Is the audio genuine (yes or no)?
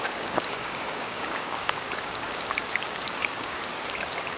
no